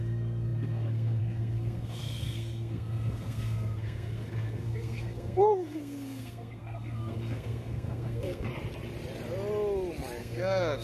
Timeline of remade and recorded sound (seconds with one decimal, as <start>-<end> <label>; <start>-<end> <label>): 0.0-8.5 remade; 8.5-10.2 recorded; 10.2-10.8 remade